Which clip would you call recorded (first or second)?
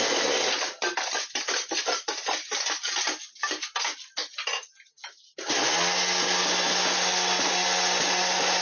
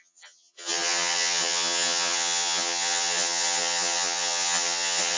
first